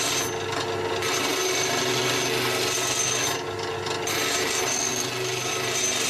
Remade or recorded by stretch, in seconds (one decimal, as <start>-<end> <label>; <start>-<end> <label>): 0.0-6.1 recorded